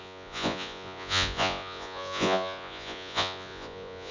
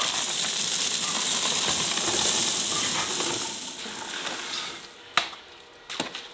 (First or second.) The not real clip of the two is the first